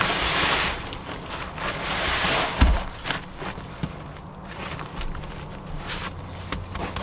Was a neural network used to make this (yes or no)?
no